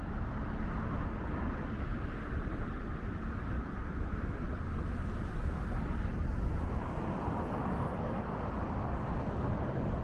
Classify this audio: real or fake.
real